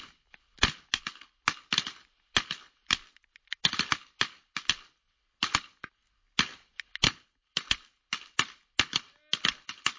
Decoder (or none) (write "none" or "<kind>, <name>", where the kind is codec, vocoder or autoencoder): none